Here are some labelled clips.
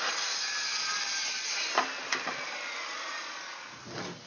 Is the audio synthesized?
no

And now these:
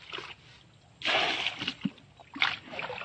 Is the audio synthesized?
no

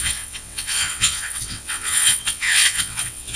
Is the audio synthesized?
yes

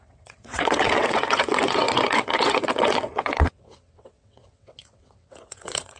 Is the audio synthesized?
yes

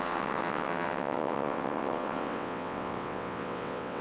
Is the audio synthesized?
yes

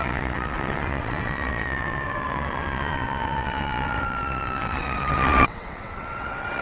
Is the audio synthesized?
yes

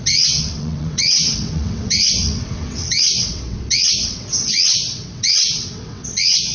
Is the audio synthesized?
yes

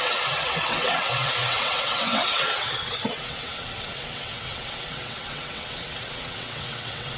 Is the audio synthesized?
yes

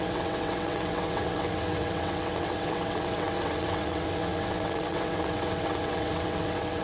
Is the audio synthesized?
yes